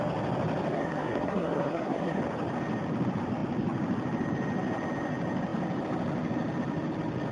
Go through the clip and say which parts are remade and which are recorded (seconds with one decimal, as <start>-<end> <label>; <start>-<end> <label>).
0.0-0.7 recorded; 0.7-2.2 remade; 2.2-7.3 recorded